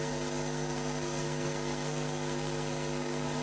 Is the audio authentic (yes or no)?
no